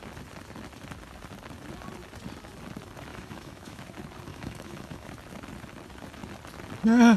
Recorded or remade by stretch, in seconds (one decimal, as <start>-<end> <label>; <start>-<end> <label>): 0.0-3.1 recorded; 3.1-3.8 remade; 3.8-4.3 recorded; 4.3-5.1 remade; 5.1-7.2 recorded